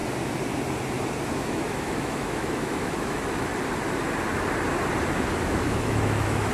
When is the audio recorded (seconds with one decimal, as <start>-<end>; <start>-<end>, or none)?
0.0-1.3; 3.5-5.4